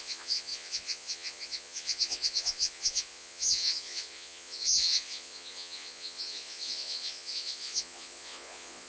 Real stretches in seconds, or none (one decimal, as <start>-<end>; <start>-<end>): none